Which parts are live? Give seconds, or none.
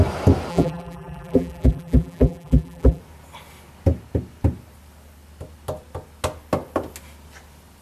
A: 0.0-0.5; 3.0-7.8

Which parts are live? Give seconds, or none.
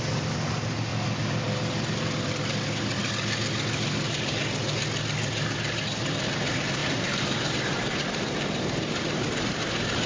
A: 0.0-6.8; 9.6-10.1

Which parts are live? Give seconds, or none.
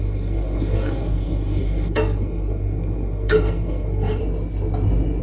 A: 4.2-5.2